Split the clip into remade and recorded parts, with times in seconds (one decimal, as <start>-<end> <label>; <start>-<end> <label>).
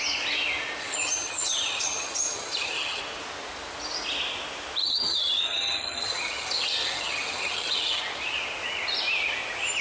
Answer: 0.0-0.8 recorded; 0.8-3.0 remade; 3.0-4.8 recorded; 4.8-8.0 remade; 8.0-9.8 recorded